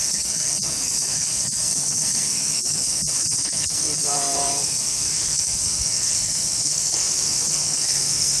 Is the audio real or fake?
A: fake